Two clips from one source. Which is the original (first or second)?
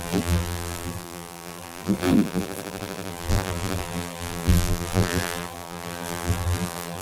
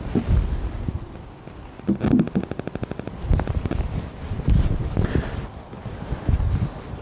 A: second